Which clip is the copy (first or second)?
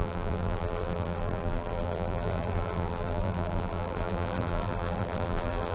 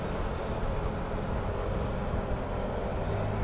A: first